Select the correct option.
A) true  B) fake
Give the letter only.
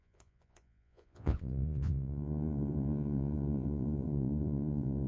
B